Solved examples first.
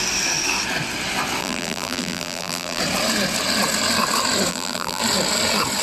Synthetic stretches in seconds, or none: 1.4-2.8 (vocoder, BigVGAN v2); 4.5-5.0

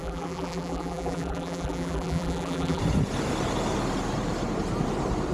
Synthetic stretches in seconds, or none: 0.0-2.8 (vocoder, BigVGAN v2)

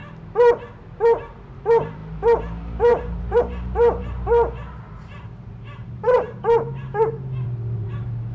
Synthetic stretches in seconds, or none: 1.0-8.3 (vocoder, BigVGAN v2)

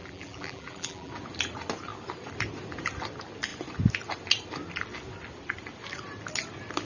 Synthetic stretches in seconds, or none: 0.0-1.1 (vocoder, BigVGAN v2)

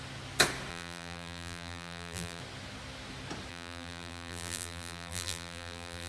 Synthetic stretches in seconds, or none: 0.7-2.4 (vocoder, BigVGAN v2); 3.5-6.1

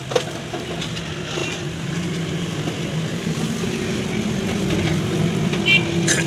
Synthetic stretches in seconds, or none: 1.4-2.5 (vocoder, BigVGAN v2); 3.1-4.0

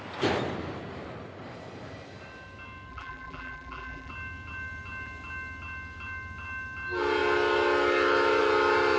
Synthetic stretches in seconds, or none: 2.9-4.1 (vocoder, BigVGAN v2)